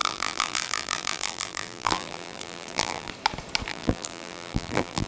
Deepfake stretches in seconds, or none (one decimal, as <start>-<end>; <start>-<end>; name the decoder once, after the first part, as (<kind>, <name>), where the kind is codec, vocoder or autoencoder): 0.0-3.1 (vocoder, BigVGAN v2); 3.7-5.1